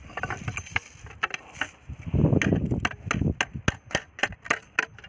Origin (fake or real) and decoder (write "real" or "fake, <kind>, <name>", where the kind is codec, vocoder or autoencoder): real